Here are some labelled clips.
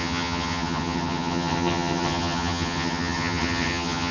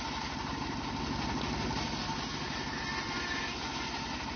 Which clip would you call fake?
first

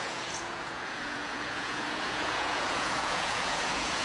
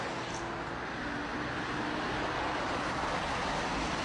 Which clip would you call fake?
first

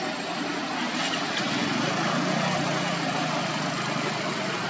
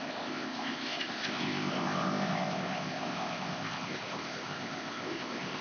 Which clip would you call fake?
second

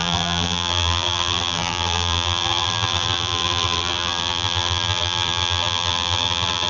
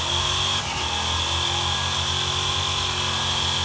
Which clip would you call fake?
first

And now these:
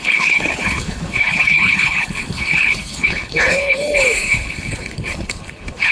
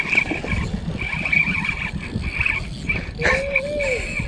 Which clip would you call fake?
first